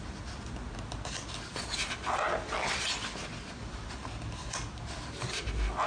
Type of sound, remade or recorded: recorded